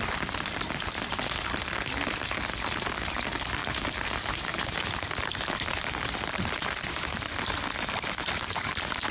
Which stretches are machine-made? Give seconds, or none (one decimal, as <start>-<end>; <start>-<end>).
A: 3.6-4.1